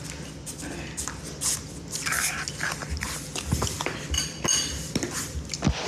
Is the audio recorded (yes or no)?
yes